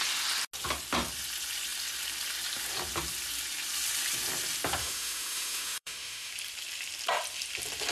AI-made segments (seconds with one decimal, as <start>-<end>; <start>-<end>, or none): 4.8-6.3